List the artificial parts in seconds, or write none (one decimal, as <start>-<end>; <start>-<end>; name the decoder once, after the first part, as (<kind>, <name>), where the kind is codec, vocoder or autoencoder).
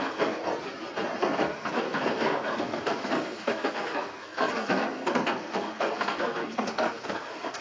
0.0-0.4 (codec, SNAC); 1.2-7.6